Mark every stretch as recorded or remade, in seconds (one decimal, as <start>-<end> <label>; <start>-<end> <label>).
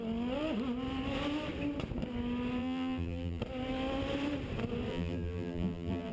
0.0-2.6 recorded; 2.6-3.4 remade; 3.4-4.9 recorded; 4.9-6.1 remade